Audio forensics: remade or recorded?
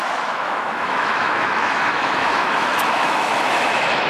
remade